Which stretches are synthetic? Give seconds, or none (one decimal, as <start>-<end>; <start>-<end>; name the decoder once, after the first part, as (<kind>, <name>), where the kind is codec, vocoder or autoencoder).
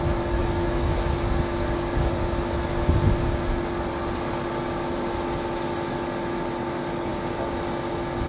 0.4-2.1 (codec, DAC)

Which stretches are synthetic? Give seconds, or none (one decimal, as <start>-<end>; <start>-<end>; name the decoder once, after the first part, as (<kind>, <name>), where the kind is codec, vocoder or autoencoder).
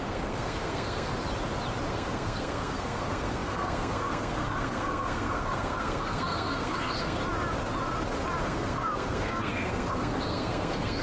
0.0-1.1 (codec, SNAC); 1.9-7.2; 8.4-11.0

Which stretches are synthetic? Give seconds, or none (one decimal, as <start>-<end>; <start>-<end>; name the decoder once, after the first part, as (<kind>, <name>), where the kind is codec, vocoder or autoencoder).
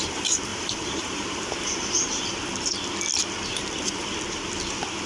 0.5-2.3 (vocoder, BigVGAN v2)